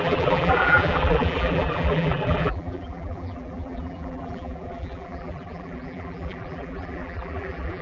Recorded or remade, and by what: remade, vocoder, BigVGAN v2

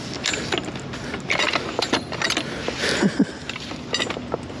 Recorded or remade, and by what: recorded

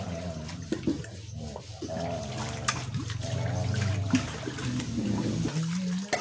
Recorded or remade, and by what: recorded